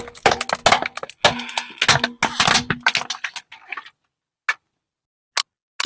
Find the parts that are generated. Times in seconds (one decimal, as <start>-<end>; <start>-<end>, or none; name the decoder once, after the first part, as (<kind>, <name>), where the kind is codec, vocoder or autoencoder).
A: none

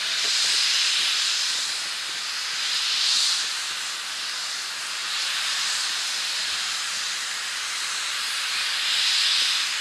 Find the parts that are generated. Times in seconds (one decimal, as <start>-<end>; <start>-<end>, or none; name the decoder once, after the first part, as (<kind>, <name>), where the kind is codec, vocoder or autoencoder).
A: 5.0-6.4 (vocoder, BigVGAN v2)

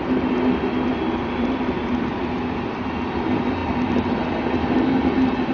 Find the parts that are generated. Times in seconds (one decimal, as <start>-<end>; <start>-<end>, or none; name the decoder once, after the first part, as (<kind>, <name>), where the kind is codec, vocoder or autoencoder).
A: 1.2-1.9 (vocoder, BigVGAN v2)

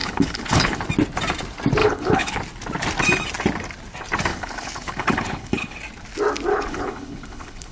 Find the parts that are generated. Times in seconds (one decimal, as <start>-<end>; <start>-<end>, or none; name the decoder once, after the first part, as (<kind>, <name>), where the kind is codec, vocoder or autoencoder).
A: 0.0-0.8 (codec, HILCodec); 1.8-2.4; 4.3-5.8; 6.5-7.7

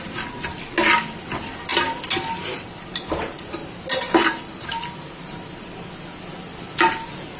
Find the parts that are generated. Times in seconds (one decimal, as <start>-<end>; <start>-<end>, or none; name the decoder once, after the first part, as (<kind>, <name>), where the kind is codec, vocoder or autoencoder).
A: none

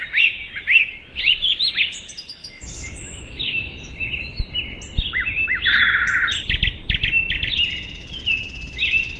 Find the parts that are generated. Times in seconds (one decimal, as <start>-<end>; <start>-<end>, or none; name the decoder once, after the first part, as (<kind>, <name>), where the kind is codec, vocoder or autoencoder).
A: 2.4-4.4 (autoencoder, DAC-VAE)